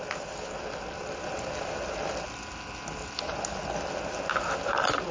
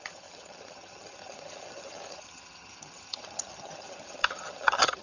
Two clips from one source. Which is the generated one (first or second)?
second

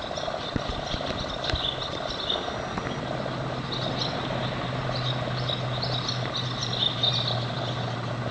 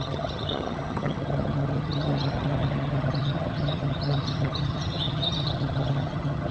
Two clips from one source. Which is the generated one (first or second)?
second